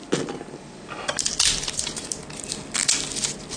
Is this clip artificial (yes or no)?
no